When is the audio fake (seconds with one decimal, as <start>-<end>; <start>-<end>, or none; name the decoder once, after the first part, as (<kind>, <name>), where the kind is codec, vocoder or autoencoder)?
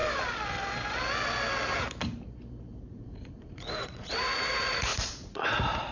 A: 2.8-5.9 (vocoder, Vocos)